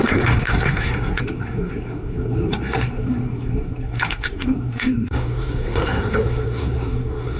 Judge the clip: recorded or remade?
remade